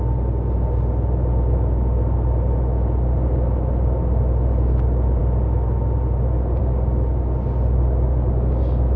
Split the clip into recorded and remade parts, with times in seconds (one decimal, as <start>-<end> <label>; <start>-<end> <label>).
0.0-9.0 recorded